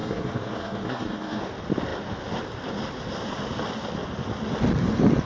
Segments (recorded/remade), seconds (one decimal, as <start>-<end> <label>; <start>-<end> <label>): 0.0-1.4 remade; 1.4-5.3 recorded